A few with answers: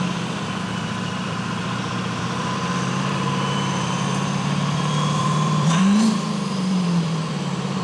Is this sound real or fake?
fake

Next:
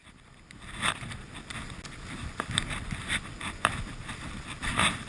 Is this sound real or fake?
real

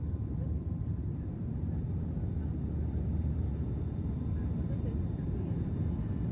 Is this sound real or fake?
fake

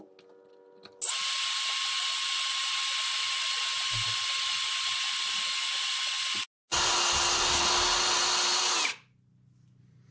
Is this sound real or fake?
real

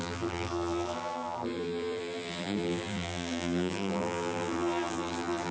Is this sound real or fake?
fake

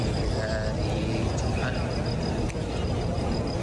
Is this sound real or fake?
real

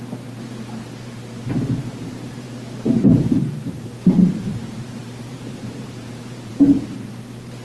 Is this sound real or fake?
fake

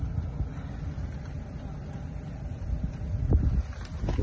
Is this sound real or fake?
real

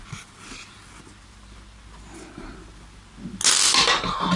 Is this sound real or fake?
real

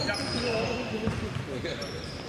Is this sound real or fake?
real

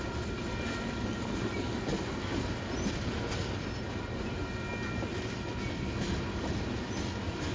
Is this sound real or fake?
real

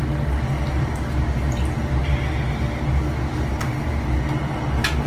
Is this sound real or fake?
real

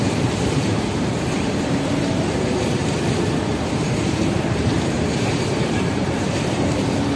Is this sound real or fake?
fake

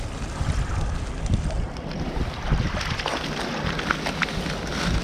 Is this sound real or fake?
real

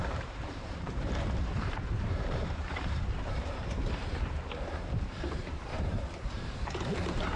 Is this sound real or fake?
fake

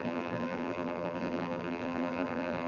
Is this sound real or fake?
fake